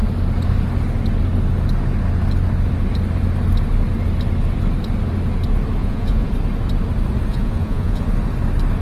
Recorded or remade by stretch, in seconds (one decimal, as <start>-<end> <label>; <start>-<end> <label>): 0.0-5.8 recorded; 5.8-6.3 remade; 6.3-7.3 recorded; 7.3-8.0 remade; 8.0-8.8 recorded